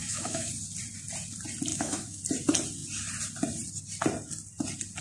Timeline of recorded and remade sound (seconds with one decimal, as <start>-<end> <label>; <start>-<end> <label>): 0.0-0.5 remade; 0.5-1.7 recorded; 1.7-2.2 remade; 2.2-5.0 recorded